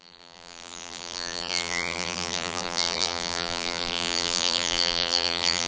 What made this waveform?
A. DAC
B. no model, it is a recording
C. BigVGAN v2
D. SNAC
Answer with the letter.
C